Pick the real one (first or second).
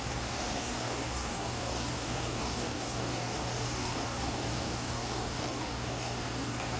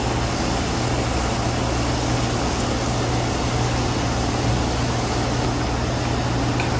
second